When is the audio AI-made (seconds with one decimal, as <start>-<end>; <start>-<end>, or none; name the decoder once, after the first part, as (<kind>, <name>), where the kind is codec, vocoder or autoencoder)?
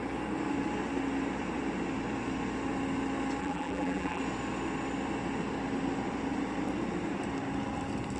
3.4-4.2 (vocoder, BigVGAN v2)